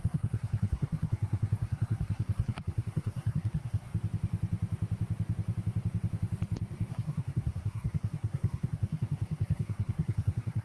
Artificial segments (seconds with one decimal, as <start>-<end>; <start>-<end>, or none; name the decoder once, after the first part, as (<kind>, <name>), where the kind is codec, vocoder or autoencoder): 0.0-3.9 (codec, SNAC); 6.9-10.6